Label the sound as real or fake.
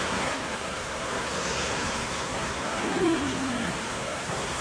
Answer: fake